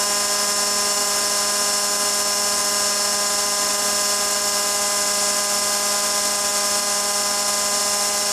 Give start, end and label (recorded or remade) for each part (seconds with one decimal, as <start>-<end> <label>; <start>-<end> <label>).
0.0-8.3 recorded